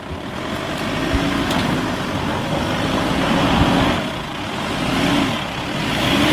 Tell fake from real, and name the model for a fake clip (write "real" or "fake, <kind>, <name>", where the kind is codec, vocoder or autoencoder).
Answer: real